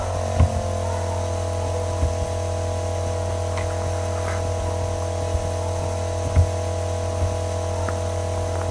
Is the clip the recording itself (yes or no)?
yes